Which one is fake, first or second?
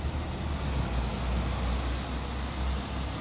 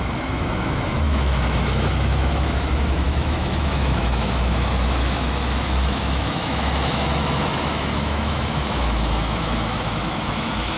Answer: second